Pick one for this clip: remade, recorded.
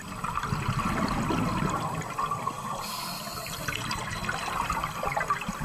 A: recorded